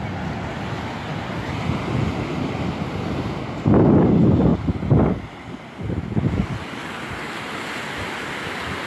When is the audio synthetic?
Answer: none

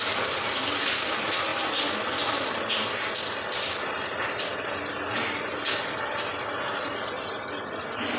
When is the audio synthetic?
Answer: none

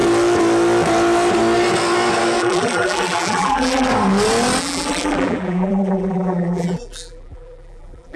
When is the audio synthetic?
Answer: 2.4-3.9; 4.6-8.2

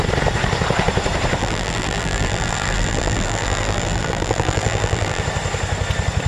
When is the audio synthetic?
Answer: 1.4-5.2

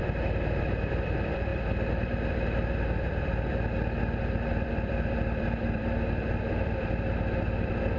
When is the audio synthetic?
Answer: 0.0-8.0

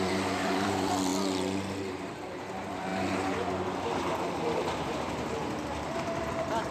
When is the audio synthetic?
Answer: 0.0-1.1; 1.9-2.9; 4.2-6.7

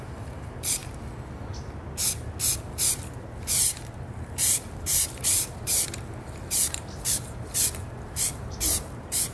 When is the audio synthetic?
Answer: 0.0-0.8; 2.6-9.3

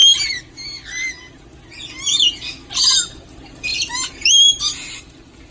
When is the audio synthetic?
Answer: 3.7-4.6